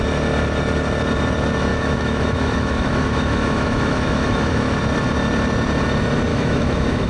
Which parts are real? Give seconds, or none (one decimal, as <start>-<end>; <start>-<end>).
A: 0.0-1.7; 4.8-6.3